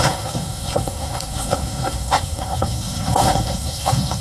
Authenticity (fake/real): fake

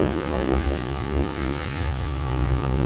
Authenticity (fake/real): fake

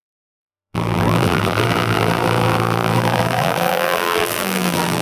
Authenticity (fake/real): fake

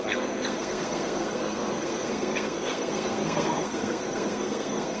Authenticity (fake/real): fake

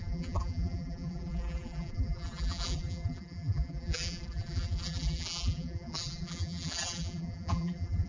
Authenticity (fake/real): fake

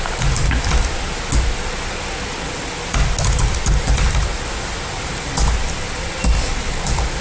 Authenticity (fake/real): real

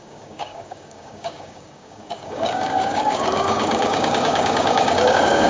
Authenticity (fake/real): fake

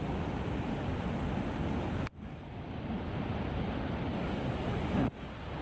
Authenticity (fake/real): real